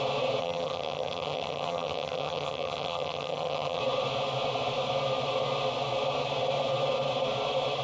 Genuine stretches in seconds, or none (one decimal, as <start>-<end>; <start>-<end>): 0.0-0.4; 3.8-7.8